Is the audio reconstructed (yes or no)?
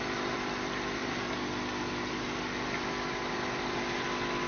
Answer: yes